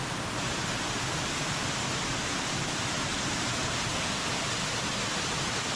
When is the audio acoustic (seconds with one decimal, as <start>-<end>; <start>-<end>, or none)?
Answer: 0.9-5.8

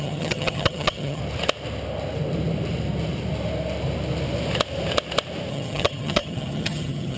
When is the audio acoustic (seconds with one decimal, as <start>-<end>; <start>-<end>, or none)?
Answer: 1.2-5.5